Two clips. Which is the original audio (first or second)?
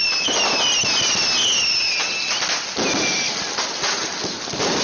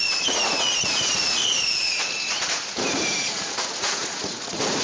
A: first